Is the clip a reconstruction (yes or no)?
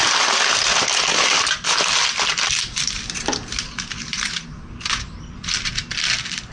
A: no